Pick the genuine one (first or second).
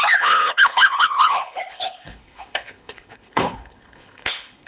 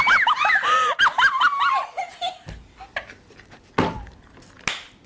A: second